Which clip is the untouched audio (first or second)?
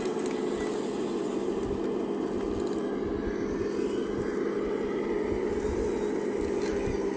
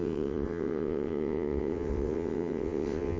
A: first